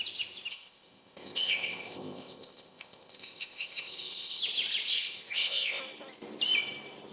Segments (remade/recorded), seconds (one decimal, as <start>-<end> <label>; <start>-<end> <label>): 0.0-0.5 recorded; 0.5-4.4 remade; 4.4-4.9 recorded; 4.9-5.8 remade; 5.8-7.1 recorded